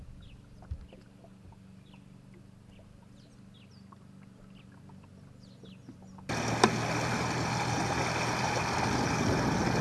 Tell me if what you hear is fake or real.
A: real